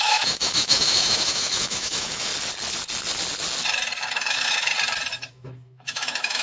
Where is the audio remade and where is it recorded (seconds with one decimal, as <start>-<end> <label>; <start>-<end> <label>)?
0.0-2.3 remade; 2.3-4.1 recorded; 4.1-4.7 remade; 4.7-5.3 recorded; 5.3-6.4 remade